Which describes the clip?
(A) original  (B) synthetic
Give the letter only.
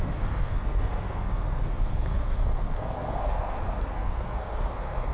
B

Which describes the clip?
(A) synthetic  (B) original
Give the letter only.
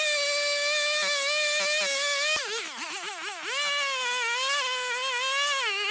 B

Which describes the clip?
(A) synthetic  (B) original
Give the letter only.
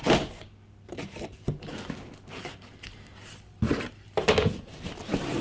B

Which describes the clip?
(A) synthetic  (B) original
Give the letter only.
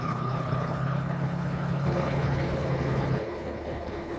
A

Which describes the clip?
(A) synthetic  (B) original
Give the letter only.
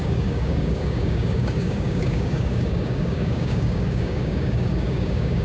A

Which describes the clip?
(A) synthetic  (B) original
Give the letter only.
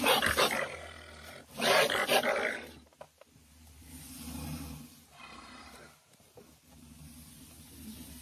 B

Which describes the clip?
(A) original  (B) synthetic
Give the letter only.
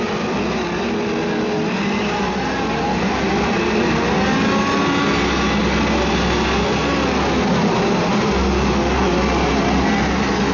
A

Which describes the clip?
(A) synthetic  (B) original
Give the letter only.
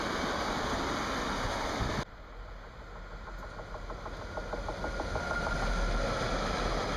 B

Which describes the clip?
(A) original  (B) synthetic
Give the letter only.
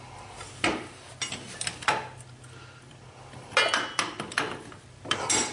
A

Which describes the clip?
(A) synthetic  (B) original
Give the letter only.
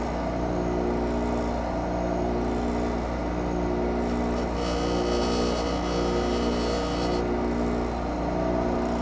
B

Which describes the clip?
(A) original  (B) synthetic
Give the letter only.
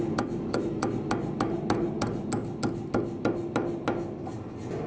A